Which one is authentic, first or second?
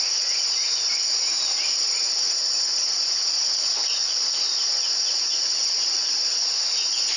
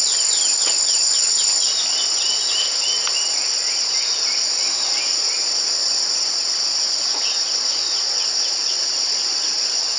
second